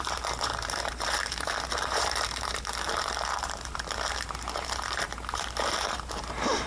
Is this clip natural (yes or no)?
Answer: no